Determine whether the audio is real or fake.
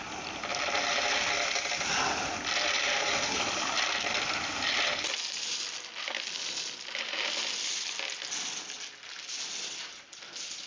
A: real